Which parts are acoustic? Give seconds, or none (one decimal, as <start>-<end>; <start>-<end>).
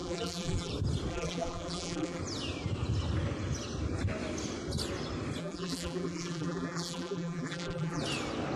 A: 0.7-1.1; 2.2-5.4; 8.0-8.6